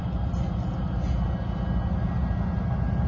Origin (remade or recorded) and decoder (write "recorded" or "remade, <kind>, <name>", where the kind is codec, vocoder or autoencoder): recorded